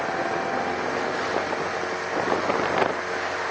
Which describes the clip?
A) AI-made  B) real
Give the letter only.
B